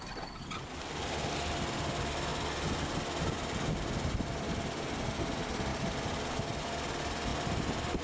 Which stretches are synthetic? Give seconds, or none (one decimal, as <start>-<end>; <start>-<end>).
none